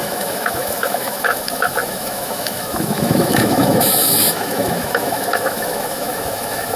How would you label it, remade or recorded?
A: remade